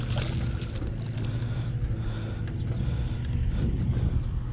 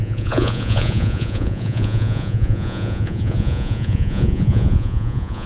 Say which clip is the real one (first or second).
first